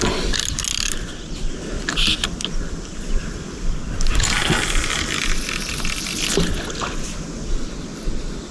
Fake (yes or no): no